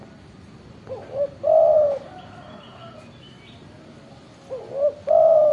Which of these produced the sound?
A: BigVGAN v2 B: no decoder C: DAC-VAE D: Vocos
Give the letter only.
B